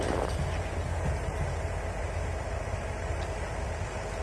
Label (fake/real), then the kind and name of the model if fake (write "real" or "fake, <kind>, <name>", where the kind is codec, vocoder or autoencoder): real